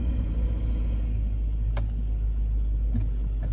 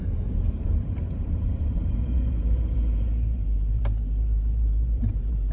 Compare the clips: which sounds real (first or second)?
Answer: first